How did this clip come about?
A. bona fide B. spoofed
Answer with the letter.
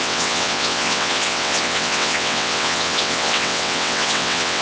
B